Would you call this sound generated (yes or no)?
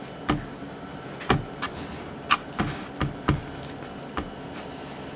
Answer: no